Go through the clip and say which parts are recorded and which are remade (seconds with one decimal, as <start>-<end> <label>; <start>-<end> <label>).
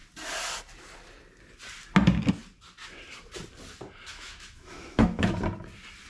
0.0-4.1 recorded; 4.1-5.3 remade; 5.3-6.1 recorded